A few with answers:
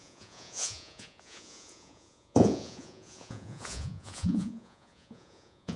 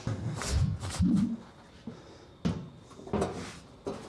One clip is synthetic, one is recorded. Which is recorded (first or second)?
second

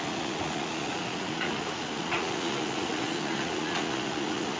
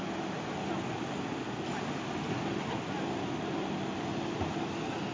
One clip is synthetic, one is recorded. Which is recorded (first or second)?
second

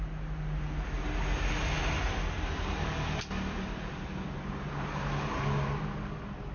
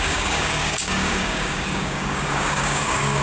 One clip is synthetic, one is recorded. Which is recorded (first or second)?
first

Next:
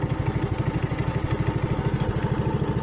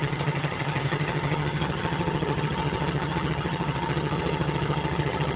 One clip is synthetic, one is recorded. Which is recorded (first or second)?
first